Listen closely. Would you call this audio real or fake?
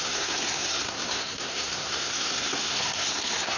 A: fake